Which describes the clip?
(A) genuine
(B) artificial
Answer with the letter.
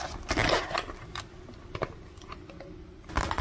A